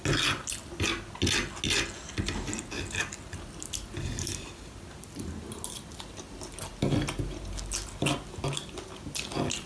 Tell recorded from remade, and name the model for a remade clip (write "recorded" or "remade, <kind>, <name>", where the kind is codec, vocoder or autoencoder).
recorded